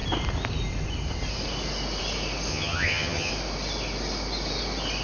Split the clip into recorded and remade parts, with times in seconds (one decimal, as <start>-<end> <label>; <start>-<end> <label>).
0.0-2.5 recorded; 2.5-3.3 remade; 3.3-5.0 recorded